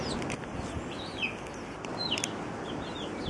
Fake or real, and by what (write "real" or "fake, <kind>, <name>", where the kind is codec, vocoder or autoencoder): real